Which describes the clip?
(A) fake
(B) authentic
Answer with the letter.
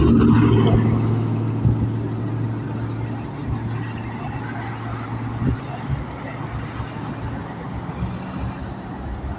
B